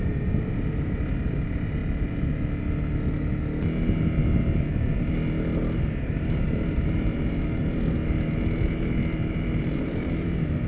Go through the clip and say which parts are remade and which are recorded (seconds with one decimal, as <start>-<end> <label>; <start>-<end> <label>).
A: 0.0-1.8 remade; 1.8-6.0 recorded; 6.0-7.6 remade; 7.6-9.3 recorded; 9.3-10.7 remade